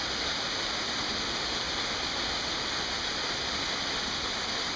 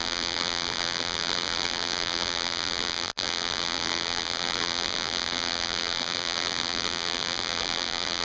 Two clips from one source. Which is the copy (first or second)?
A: second